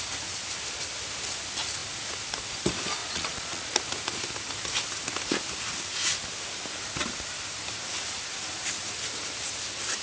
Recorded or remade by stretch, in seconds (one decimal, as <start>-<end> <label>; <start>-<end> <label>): 0.0-3.0 recorded; 3.0-3.7 remade; 3.7-10.0 recorded